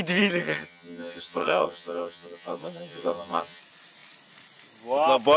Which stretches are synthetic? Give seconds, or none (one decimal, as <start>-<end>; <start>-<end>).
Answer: 0.4-3.6